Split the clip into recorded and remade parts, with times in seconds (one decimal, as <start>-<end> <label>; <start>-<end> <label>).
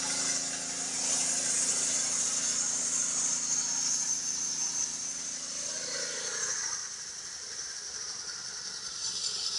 0.0-6.8 recorded; 6.8-8.0 remade; 8.0-9.6 recorded